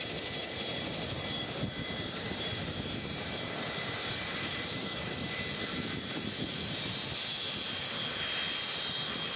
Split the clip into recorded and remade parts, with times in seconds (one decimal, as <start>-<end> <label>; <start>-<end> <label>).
0.0-0.4 recorded; 0.4-5.4 remade; 5.4-9.4 recorded